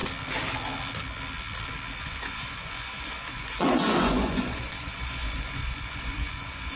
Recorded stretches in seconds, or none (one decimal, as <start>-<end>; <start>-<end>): 0.0-2.0